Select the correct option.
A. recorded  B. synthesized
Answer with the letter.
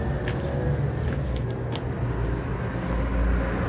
A